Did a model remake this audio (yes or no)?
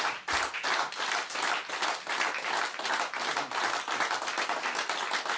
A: no